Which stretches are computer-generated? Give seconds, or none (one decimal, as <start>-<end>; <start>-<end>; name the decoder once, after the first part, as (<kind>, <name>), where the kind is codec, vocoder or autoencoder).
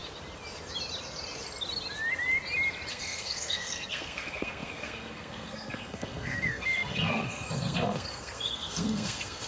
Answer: 2.9-9.5 (codec, SNAC)